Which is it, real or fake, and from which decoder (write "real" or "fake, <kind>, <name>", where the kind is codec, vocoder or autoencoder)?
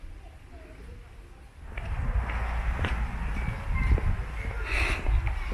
real